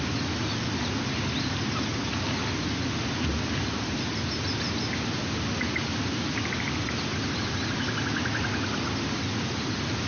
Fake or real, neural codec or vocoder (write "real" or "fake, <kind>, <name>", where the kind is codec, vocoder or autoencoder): real